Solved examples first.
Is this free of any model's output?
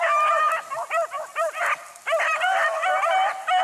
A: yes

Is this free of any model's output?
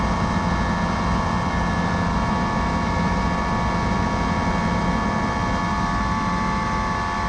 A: yes